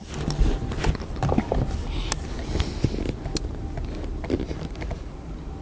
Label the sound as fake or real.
real